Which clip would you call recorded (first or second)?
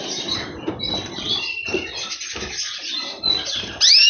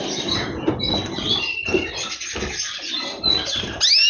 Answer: second